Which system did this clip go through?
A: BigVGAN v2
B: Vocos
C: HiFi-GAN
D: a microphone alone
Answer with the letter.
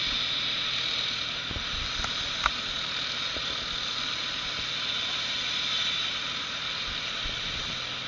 D